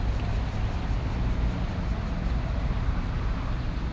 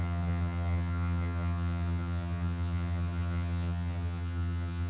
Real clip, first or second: first